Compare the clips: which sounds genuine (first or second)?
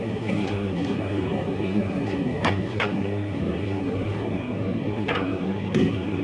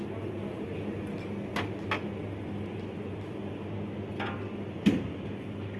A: second